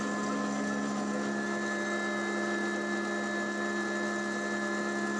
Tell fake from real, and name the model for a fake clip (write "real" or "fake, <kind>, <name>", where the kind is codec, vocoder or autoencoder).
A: real